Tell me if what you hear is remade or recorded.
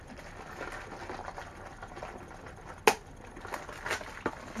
recorded